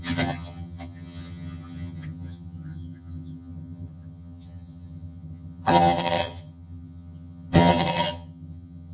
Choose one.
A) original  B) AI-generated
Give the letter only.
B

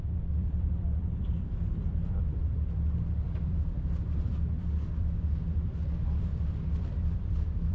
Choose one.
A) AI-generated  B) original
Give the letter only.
A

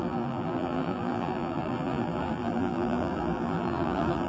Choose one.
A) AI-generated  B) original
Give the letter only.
A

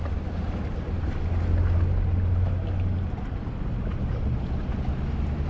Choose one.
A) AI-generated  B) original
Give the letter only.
B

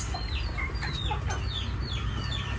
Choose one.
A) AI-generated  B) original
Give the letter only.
B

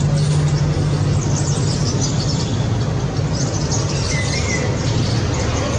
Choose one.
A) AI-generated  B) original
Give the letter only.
B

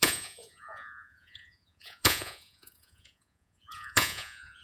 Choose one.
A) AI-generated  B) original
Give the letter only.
A